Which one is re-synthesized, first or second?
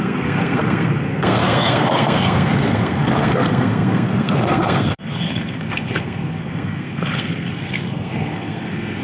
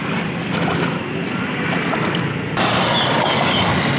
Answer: first